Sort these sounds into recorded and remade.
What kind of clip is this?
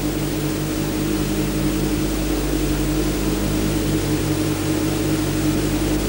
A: recorded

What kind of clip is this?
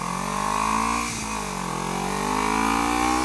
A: recorded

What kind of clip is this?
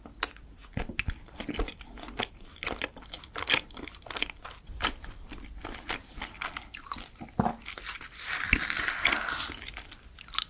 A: recorded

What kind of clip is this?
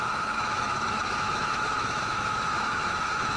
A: remade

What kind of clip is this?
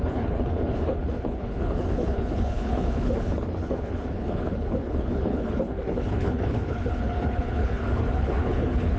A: remade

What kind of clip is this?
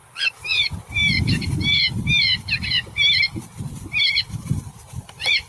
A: remade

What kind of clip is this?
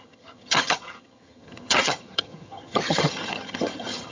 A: remade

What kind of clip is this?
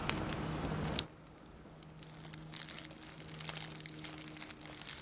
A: recorded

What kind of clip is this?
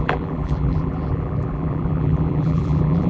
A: remade